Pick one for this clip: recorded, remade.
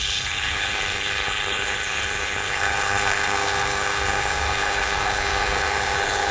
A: remade